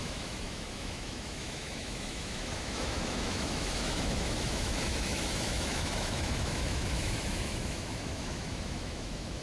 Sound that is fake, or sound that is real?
fake